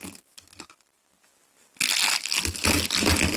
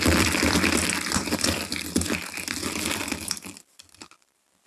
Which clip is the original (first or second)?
first